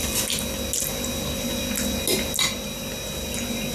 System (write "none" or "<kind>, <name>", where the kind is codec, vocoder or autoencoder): none